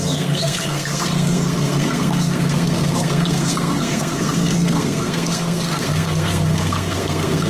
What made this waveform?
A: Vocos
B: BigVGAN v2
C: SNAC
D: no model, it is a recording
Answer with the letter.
C